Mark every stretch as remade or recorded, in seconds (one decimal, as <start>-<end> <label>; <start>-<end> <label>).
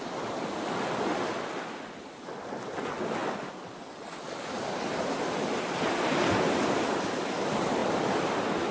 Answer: 0.0-8.7 recorded